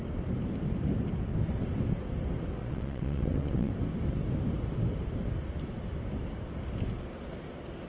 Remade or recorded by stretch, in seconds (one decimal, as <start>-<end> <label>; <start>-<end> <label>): 0.0-2.6 recorded; 2.6-3.7 remade; 3.7-7.9 recorded